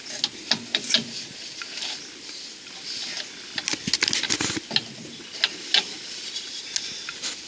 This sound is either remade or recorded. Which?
recorded